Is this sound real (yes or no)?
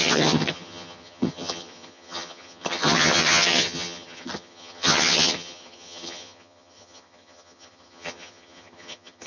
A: no